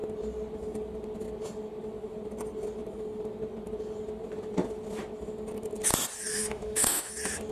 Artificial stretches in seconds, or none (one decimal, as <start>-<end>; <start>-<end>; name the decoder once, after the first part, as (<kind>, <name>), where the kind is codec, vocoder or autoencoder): 6.3-7.1 (autoencoder, DAC-VAE)